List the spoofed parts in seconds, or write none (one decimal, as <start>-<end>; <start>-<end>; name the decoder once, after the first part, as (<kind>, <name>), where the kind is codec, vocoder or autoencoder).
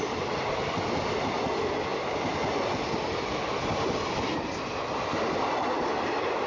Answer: none